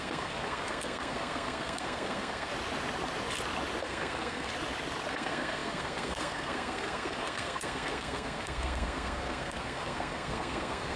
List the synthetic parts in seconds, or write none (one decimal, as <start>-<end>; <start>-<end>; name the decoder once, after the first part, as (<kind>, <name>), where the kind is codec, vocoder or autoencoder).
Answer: 0.0-2.5 (codec, SNAC); 3.8-4.5; 5.1-11.0